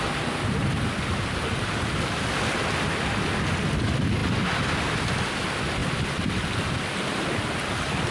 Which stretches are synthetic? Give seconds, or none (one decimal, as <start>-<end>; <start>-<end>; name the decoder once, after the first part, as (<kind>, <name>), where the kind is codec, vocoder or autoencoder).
none